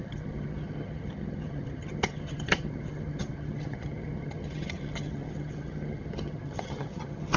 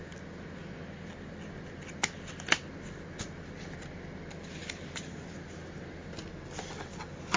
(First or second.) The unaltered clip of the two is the second